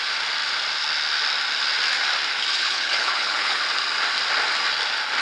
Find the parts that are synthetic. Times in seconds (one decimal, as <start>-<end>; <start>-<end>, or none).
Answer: 2.6-3.6